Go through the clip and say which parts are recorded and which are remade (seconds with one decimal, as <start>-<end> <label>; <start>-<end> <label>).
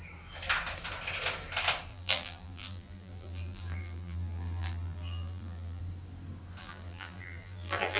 0.0-1.9 recorded; 1.9-5.8 remade; 5.8-6.6 recorded; 6.6-8.0 remade